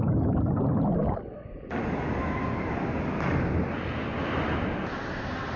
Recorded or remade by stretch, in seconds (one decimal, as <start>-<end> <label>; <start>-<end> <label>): 0.0-5.6 recorded